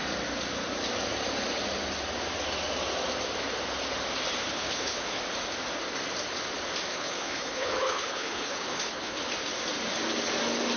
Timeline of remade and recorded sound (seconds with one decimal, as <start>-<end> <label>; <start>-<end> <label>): 0.0-4.4 recorded; 4.4-5.2 remade; 5.2-6.9 recorded; 6.9-9.2 remade; 9.2-10.8 recorded